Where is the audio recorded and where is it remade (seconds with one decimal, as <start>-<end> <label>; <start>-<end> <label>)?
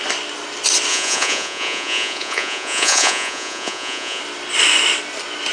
0.0-0.9 recorded; 0.9-4.2 remade; 4.2-5.5 recorded